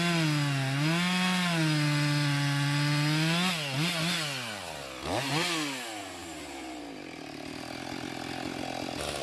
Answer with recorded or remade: recorded